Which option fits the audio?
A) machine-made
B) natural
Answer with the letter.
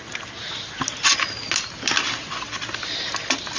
B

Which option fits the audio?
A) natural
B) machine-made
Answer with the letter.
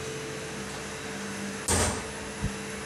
A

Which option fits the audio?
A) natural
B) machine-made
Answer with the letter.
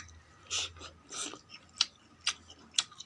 A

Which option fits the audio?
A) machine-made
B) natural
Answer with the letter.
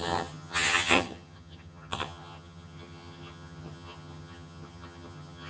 A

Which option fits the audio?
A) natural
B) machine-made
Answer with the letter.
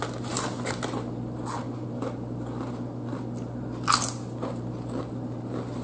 A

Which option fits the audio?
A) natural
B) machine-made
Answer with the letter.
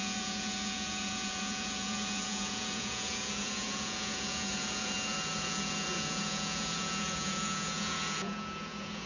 B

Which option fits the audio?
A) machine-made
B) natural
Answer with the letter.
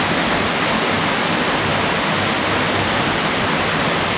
B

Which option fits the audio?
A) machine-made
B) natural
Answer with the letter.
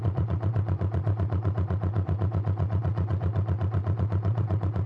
A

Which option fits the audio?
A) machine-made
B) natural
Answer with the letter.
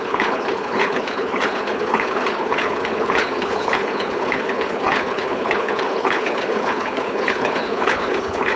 A